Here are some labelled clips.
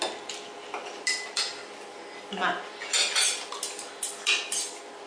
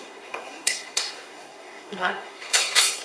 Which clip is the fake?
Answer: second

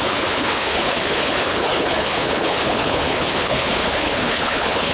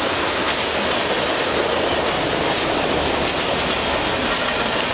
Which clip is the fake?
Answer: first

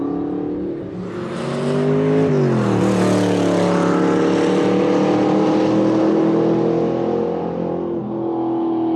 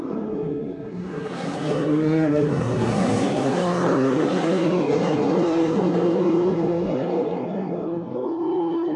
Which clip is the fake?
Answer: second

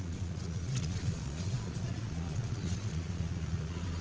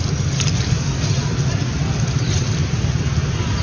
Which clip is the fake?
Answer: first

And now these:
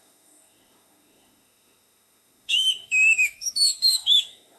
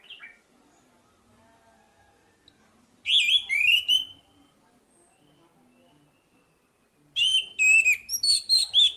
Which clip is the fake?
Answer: first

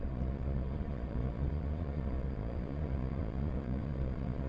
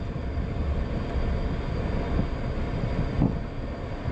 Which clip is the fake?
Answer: first